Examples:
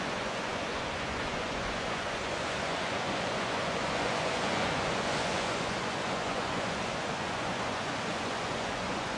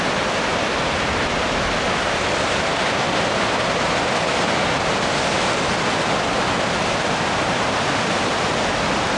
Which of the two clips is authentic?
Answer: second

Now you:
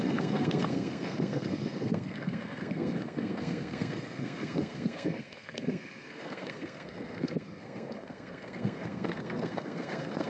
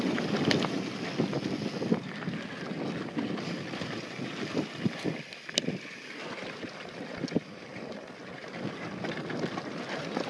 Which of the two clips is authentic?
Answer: second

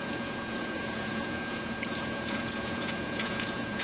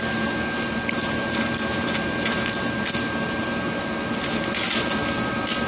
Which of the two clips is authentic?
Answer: second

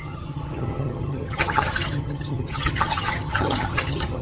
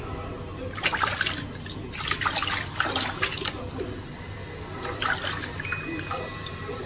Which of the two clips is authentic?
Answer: second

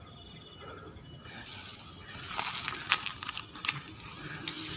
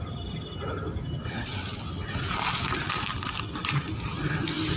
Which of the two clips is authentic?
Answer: first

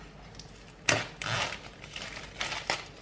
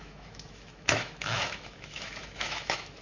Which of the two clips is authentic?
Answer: first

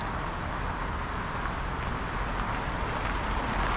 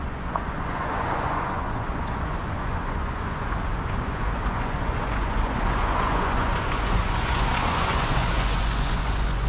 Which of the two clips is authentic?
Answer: first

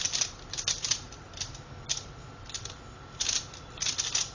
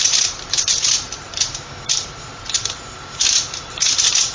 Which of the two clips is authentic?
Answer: first